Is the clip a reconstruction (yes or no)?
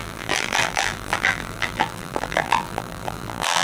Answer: yes